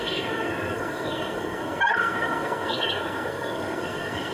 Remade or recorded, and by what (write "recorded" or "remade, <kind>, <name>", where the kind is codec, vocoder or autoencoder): remade, codec, SNAC